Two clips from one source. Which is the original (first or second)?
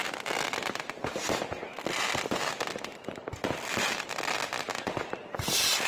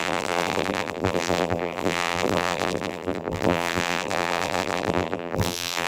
first